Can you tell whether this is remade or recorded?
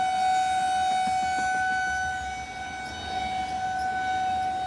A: recorded